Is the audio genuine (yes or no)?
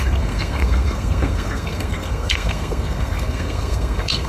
no